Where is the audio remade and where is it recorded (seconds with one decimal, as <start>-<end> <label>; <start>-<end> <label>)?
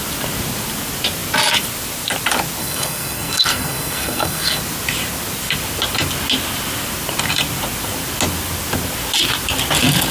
0.0-2.6 recorded; 2.6-4.6 remade; 4.6-10.1 recorded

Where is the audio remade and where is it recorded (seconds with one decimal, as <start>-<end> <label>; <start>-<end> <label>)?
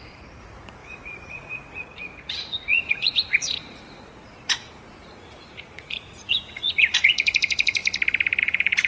0.0-7.8 remade; 7.8-8.4 recorded; 8.4-8.9 remade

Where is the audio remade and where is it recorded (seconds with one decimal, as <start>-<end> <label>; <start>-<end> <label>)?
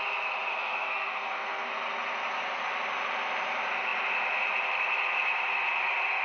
0.0-0.5 recorded; 0.5-1.7 remade; 1.7-6.2 recorded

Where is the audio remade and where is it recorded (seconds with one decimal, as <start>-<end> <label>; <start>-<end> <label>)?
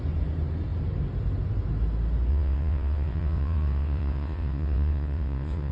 0.0-2.3 recorded; 2.3-5.7 remade